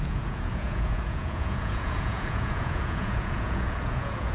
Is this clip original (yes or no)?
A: no